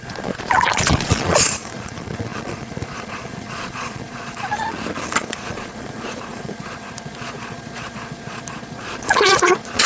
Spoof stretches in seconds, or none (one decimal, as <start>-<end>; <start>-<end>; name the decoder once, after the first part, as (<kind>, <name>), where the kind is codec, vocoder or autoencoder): 0.0-4.5 (vocoder, Vocos); 5.1-9.9